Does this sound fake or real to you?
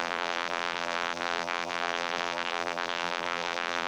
fake